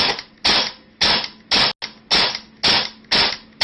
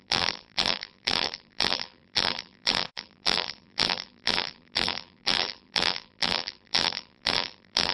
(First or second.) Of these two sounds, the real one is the first